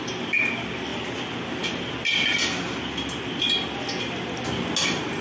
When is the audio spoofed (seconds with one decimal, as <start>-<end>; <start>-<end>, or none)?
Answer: none